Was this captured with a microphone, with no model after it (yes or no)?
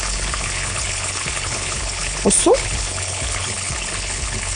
no